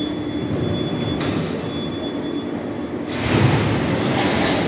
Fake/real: real